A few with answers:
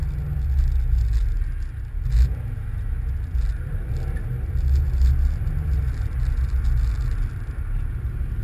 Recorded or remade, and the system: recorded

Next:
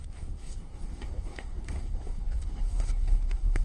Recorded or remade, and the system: remade, codec, SNAC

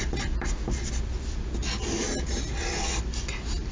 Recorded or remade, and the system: recorded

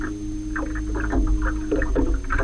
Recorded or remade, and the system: recorded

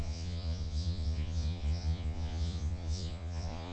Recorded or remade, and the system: remade, vocoder, Vocos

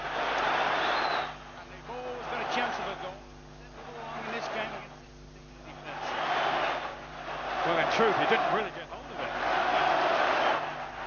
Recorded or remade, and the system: recorded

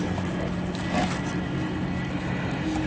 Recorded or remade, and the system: recorded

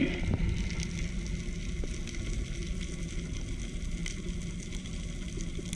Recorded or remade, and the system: recorded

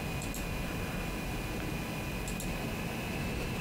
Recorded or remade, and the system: recorded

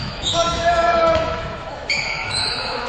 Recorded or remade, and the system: remade, autoencoder, DAC-VAE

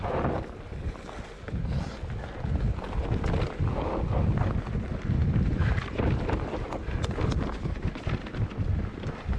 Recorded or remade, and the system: recorded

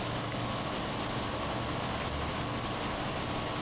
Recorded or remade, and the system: recorded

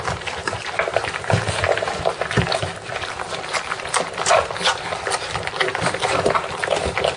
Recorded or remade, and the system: recorded